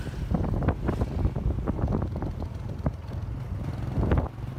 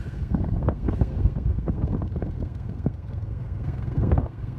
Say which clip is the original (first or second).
first